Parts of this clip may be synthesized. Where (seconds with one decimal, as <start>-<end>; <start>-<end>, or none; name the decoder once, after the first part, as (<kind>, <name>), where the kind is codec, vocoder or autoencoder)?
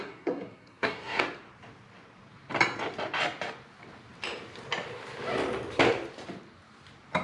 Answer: 0.0-1.2 (codec, SNAC)